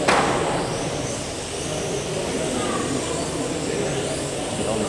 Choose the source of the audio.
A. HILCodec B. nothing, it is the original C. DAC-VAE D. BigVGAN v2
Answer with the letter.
B